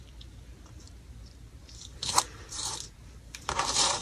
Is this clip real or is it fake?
fake